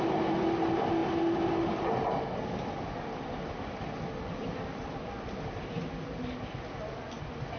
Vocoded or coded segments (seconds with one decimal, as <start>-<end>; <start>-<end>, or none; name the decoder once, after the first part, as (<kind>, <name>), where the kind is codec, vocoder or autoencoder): 4.4-5.0 (vocoder, BigVGAN v2)